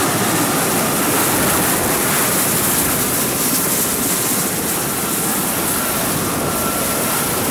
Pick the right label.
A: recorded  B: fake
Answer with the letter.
A